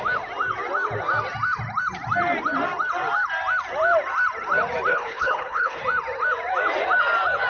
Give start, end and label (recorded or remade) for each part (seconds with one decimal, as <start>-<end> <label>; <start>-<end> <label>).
0.0-4.9 recorded; 4.9-5.8 remade; 5.8-7.5 recorded